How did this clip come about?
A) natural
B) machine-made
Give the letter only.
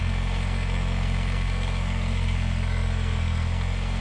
B